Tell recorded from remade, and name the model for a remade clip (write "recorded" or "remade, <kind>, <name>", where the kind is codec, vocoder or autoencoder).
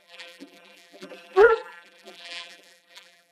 remade, vocoder, BigVGAN v2